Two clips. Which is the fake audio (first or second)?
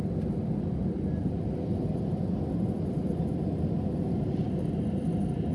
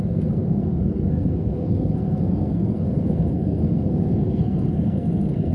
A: second